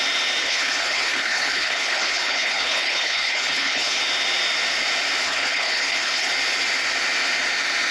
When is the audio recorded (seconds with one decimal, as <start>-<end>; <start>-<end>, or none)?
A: 0.0-0.4; 4.0-5.2; 6.3-7.9